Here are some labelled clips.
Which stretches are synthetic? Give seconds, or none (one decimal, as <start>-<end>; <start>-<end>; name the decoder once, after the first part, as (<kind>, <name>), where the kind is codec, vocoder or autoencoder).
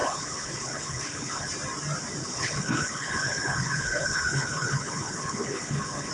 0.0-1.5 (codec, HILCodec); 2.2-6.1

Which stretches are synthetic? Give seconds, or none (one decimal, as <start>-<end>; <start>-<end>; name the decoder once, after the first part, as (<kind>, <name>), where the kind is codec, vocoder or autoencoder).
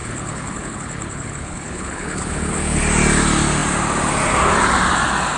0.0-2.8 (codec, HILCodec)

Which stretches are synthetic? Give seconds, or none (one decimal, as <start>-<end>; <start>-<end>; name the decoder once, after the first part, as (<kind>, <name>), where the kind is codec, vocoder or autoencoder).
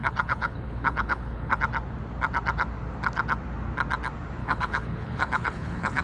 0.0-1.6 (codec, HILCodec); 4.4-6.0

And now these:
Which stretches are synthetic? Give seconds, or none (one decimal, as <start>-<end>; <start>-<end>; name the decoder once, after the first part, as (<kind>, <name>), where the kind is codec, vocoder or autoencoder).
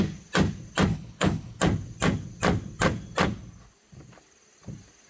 0.9-1.6 (codec, HILCodec)